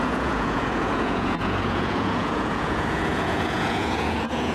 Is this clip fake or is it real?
fake